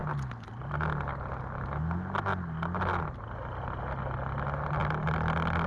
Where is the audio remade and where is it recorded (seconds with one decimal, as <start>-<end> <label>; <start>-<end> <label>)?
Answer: 0.0-5.7 recorded